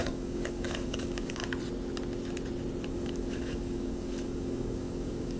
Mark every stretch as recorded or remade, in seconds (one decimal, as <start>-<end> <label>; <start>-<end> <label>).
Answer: 0.0-1.4 remade; 1.4-2.9 recorded; 2.9-5.4 remade